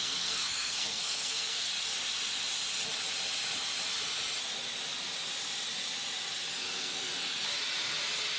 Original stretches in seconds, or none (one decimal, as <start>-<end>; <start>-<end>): 1.7-6.5; 7.1-8.4